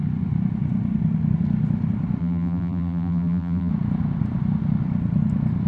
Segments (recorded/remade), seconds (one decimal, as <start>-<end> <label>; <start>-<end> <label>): 0.0-2.2 recorded; 2.2-3.7 remade; 3.7-5.7 recorded